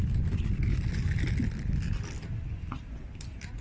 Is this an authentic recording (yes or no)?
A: yes